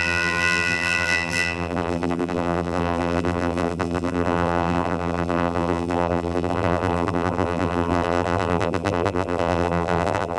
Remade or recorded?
remade